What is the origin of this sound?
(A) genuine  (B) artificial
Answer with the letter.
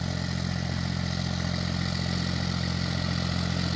A